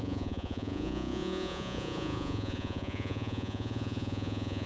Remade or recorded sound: remade